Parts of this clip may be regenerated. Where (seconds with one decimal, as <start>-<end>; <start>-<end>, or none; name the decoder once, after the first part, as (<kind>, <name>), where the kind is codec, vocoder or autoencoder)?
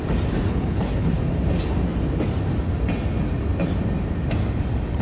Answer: 0.5-1.1 (codec, HILCodec)